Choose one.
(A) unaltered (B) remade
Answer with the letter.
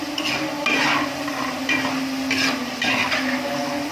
A